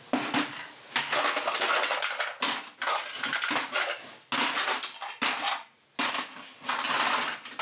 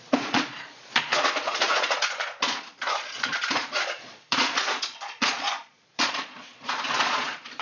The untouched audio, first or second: first